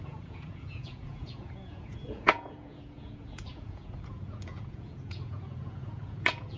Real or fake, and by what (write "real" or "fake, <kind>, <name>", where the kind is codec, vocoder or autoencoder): fake, vocoder, Vocos